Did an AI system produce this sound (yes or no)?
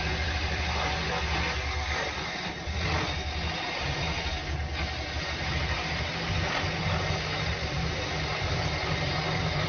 no